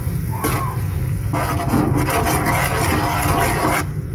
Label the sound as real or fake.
real